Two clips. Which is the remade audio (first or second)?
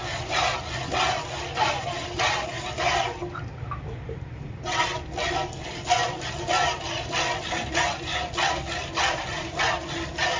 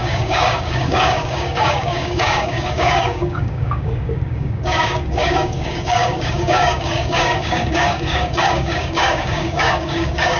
second